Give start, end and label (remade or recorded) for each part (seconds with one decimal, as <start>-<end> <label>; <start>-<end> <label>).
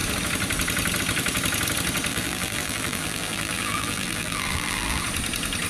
0.0-2.1 recorded; 2.1-5.0 remade; 5.0-5.7 recorded